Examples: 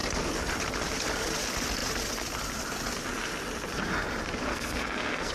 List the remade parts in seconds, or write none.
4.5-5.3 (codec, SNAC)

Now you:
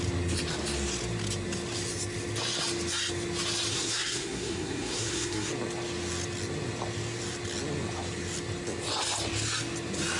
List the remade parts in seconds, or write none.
3.7-5.5 (codec, SNAC)

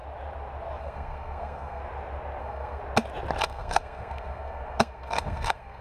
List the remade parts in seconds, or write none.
0.8-1.8 (codec, SNAC); 2.4-2.8; 3.4-5.8